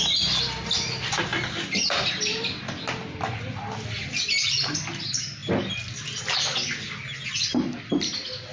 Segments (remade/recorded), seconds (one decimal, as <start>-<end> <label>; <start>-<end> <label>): 0.0-8.5 recorded